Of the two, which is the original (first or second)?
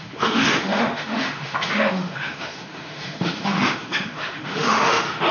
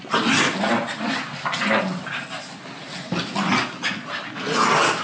second